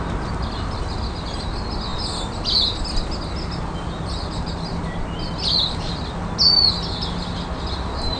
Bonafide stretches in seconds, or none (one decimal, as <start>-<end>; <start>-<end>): 0.0-8.2